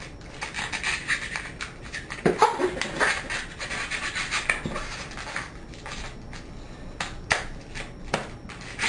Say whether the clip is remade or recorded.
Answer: recorded